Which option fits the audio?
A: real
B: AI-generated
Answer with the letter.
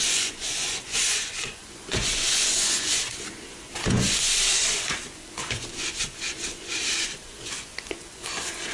B